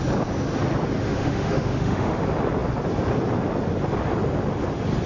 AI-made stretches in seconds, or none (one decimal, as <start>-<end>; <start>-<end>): 1.0-2.2